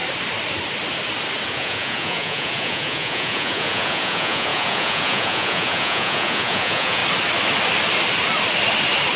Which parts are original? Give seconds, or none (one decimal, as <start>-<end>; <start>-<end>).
0.0-1.5; 7.0-9.2